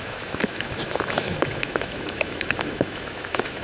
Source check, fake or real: fake